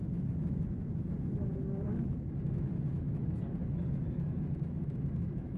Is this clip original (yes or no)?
no